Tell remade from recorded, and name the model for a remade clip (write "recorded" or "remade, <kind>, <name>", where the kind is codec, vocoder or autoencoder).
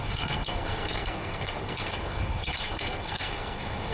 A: remade, codec, SNAC